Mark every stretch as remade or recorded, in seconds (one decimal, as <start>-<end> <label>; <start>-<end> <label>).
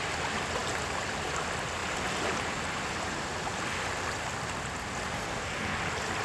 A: 0.0-5.2 recorded; 5.2-5.8 remade; 5.8-6.2 recorded